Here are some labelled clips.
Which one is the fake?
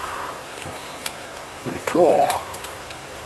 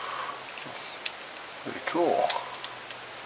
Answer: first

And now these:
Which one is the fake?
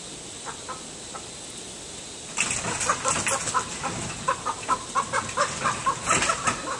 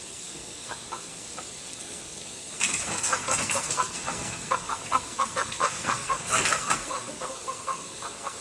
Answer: second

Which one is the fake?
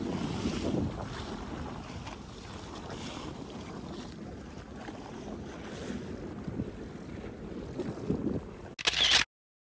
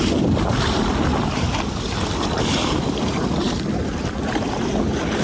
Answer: second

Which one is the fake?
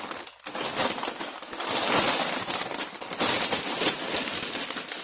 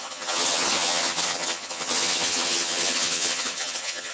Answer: second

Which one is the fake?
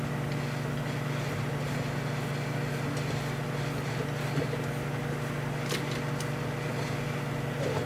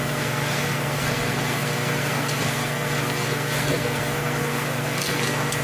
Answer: second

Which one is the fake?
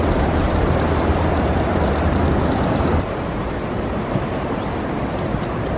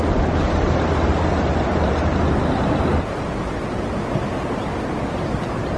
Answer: first